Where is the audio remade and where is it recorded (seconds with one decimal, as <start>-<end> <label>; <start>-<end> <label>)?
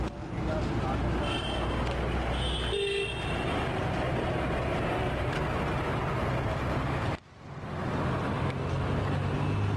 0.0-4.9 recorded; 4.9-6.0 remade; 6.0-9.8 recorded